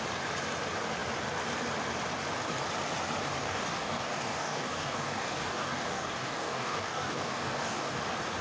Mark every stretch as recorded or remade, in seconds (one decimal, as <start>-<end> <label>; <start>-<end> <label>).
0.0-3.4 recorded; 3.4-8.0 remade; 8.0-8.4 recorded